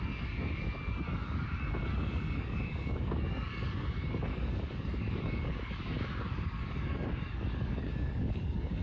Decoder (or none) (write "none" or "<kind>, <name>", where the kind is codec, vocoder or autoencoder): codec, DAC